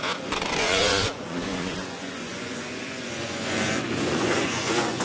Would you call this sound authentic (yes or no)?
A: no